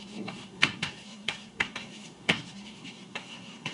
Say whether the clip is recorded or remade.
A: remade